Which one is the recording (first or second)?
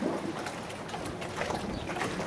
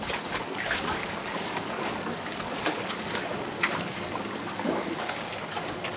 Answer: first